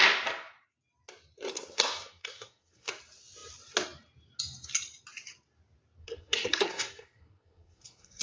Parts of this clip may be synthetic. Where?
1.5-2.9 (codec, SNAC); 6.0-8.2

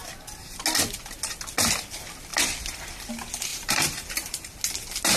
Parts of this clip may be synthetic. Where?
3.5-4.6 (vocoder, BigVGAN v2)

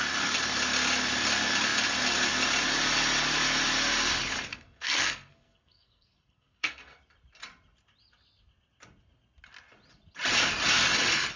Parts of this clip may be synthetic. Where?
4.5-7.0 (codec, SNAC)

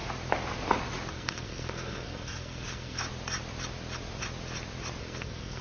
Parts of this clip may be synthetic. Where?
1.1-3.0 (codec, SNAC); 5.0-5.6